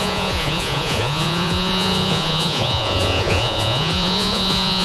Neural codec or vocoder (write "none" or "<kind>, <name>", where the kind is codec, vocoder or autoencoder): vocoder, Vocos